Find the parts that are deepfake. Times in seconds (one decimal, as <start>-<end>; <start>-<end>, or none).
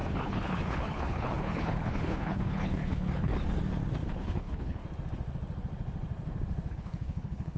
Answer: 0.0-3.3; 4.1-4.8; 6.7-7.6